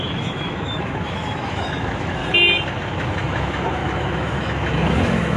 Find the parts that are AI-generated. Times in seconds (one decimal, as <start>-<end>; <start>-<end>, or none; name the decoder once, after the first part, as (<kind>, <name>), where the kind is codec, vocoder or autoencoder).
0.0-2.2 (autoencoder, DAC-VAE); 2.8-5.4